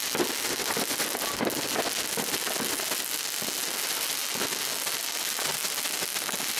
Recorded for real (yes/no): yes